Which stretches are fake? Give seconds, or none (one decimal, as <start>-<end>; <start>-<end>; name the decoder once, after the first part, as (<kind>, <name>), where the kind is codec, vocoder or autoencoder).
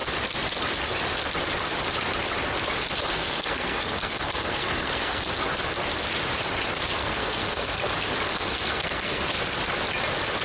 3.1-5.3 (codec, SNAC); 7.0-7.9; 8.3-9.2